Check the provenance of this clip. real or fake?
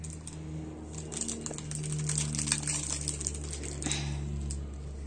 real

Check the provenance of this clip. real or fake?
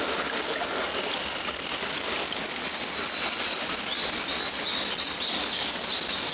real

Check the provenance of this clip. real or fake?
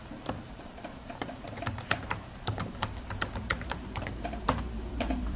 fake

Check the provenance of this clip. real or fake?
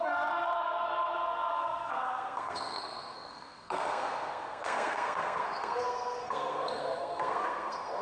fake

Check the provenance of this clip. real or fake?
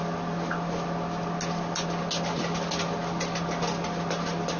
real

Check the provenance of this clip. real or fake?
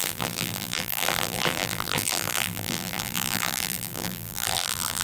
fake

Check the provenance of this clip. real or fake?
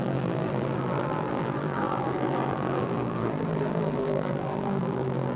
fake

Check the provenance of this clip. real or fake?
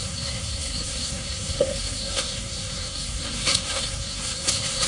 fake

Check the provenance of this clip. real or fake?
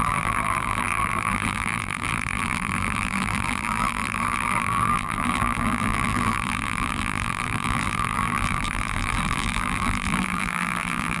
fake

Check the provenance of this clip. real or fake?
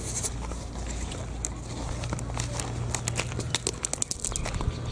real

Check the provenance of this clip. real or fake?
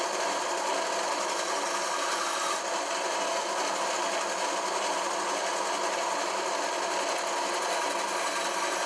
real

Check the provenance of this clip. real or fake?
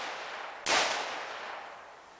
real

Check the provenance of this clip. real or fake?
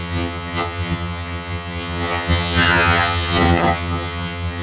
fake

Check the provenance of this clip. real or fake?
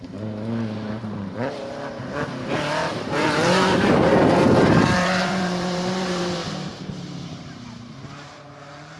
fake